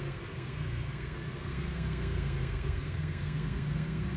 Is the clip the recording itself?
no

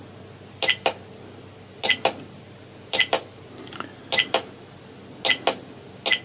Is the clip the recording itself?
yes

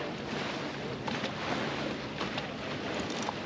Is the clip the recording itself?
yes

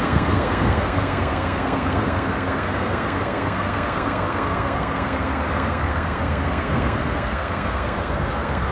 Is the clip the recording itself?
no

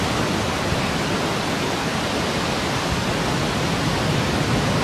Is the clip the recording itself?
yes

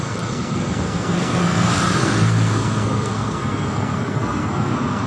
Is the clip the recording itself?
no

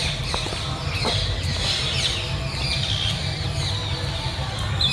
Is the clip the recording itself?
yes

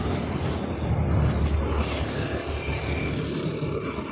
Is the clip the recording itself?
yes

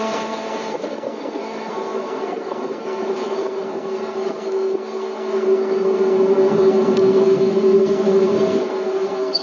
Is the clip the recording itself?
no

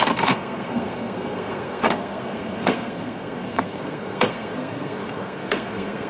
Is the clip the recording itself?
no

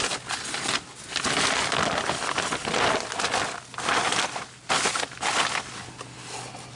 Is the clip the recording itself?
yes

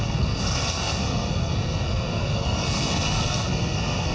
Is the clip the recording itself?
no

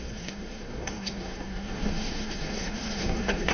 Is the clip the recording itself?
no